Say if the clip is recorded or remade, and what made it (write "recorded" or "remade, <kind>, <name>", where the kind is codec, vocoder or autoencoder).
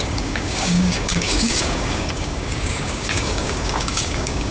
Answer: remade, codec, DAC